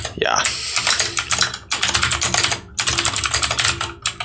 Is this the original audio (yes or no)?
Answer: yes